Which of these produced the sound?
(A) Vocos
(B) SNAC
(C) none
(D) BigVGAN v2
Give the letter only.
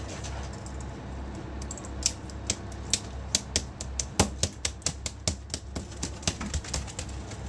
C